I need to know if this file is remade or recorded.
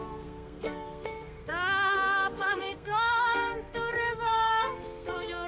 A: remade